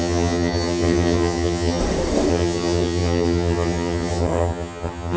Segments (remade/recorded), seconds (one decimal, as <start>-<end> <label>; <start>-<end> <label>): 0.0-1.8 remade; 1.8-2.3 recorded; 2.3-5.2 remade